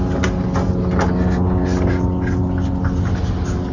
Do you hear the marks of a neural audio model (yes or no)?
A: no